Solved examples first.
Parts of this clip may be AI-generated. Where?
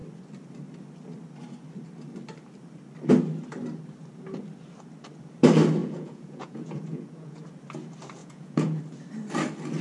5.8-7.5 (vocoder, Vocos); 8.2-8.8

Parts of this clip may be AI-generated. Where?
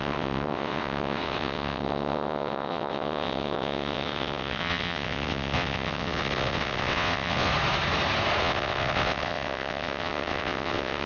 0.0-7.5 (vocoder, WaveNeXt); 8.4-11.1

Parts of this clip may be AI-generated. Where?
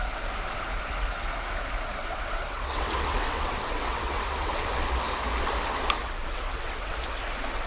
2.0-4.6 (vocoder, WaveNeXt); 6.0-6.9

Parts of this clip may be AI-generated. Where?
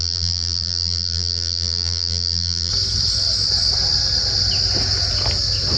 0.0-2.7 (vocoder, BigVGAN v2)